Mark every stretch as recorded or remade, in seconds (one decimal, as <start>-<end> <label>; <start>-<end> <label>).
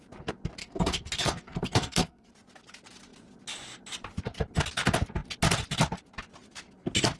0.0-0.6 recorded; 0.6-2.3 remade; 2.3-7.2 recorded